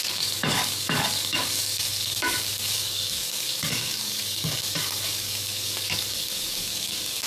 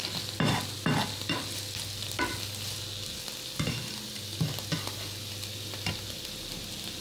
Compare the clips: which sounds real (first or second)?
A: second